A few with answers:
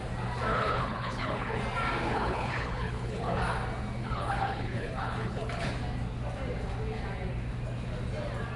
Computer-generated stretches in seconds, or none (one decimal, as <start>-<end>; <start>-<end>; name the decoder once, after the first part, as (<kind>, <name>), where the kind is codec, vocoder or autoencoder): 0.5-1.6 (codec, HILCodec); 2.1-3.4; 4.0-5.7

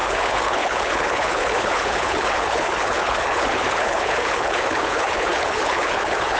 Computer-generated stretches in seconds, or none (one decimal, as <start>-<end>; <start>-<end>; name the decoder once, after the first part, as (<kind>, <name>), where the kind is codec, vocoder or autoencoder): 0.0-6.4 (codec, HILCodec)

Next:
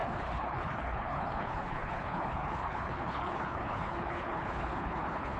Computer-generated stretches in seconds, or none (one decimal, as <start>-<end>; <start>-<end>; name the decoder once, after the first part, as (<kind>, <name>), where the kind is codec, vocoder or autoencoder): 0.0-5.4 (codec, HILCodec)

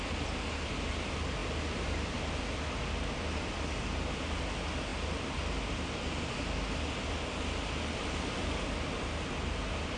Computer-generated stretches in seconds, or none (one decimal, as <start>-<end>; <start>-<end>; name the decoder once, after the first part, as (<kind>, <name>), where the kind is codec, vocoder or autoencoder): none

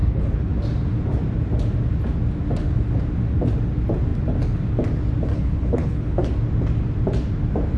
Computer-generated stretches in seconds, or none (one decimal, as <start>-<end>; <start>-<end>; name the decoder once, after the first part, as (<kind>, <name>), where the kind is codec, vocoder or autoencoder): 0.0-0.5 (codec, HILCodec); 5.3-6.3